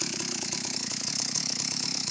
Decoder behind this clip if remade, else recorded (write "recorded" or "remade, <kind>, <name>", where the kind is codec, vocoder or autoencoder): remade, autoencoder, DAC-VAE